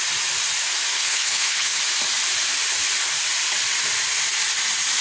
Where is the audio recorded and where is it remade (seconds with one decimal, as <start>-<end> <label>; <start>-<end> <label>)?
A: 0.0-0.9 recorded; 0.9-1.8 remade; 1.8-5.0 recorded